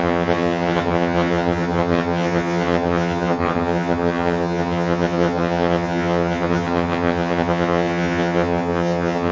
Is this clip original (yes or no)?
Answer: no